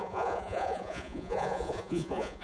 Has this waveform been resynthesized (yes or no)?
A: yes